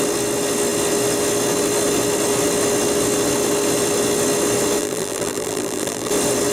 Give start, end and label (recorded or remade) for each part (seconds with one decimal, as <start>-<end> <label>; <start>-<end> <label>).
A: 0.0-4.8 recorded; 4.8-6.1 remade; 6.1-6.5 recorded